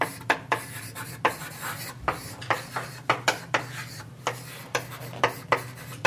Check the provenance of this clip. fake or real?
real